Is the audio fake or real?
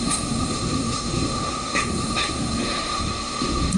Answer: fake